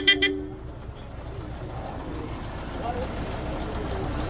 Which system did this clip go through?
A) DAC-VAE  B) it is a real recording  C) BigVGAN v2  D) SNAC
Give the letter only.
B